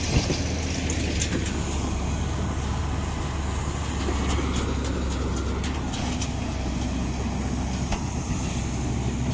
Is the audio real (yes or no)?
yes